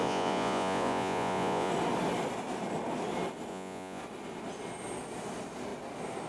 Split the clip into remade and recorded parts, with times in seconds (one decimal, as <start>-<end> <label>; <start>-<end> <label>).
0.0-1.7 remade; 1.7-3.5 recorded; 3.5-4.0 remade; 4.0-6.3 recorded